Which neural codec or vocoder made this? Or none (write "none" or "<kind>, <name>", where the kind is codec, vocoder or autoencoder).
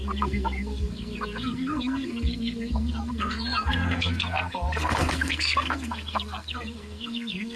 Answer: codec, SNAC